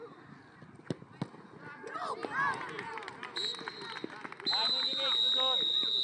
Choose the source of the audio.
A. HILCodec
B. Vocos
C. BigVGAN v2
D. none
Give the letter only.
D